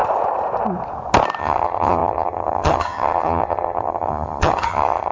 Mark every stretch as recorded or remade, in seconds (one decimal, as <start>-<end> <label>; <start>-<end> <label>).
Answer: 0.0-1.4 recorded; 1.4-5.1 remade